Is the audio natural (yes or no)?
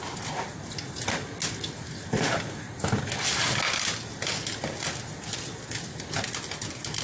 yes